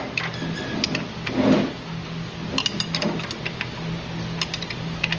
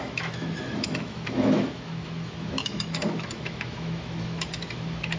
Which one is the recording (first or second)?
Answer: first